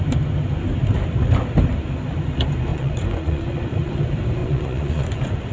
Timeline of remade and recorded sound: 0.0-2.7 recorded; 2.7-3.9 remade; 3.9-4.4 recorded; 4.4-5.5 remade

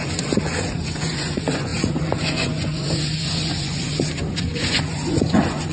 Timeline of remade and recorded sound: 0.0-5.7 remade

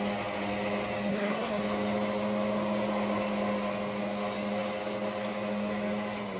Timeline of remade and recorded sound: 0.0-1.1 recorded; 1.1-1.6 remade; 1.6-6.4 recorded

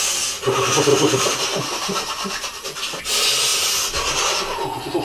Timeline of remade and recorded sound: 0.0-0.9 recorded; 0.9-3.0 remade; 3.0-5.0 recorded